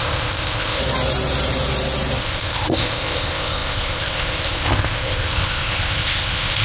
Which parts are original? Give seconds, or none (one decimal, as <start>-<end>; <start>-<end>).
0.8-2.2